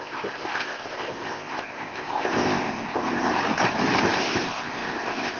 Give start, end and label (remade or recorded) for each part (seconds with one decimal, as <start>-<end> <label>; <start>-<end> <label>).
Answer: 0.0-3.3 remade; 3.3-4.2 recorded; 4.2-5.4 remade

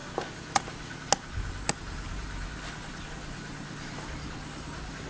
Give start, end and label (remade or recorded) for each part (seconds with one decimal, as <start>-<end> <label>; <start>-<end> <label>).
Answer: 0.0-5.1 recorded

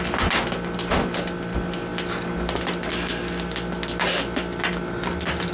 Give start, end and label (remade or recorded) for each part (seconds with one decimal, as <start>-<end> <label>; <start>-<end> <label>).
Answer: 0.0-5.5 recorded

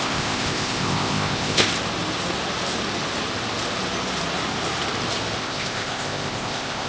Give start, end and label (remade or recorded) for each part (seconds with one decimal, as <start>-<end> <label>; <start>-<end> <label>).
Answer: 0.0-1.7 remade; 1.7-5.4 recorded; 5.4-6.9 remade

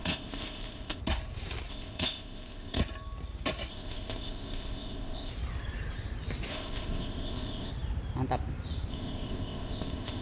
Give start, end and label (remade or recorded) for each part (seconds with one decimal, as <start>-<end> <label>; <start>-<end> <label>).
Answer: 0.0-1.0 remade; 1.0-1.7 recorded; 1.7-2.8 remade; 2.8-3.7 recorded; 3.7-5.3 remade; 5.3-6.5 recorded; 6.5-7.7 remade; 7.7-8.9 recorded; 8.9-10.2 remade